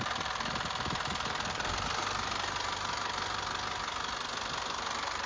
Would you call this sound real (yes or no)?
yes